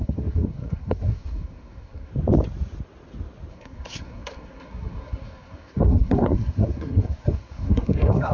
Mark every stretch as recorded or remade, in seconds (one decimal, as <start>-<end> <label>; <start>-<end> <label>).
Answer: 0.0-2.1 remade; 2.1-3.5 recorded; 3.5-8.3 remade